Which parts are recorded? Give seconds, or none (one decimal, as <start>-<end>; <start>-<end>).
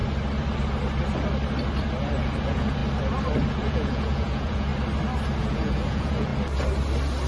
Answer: 0.0-2.4; 2.8-3.5; 4.7-5.4; 6.3-7.3